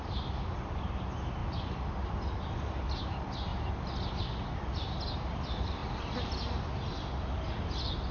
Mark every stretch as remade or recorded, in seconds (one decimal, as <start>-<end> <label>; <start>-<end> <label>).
0.0-8.1 recorded